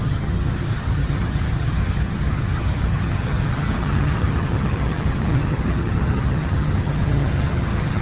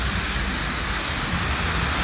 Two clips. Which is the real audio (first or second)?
second